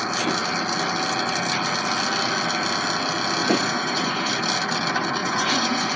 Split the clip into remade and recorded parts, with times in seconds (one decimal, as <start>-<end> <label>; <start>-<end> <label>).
0.0-3.4 recorded; 3.4-4.3 remade; 4.3-5.2 recorded; 5.2-6.0 remade